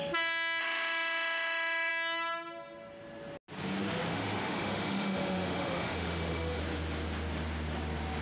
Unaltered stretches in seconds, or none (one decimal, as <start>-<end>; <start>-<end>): 0.0-0.6; 1.9-4.1; 6.6-8.2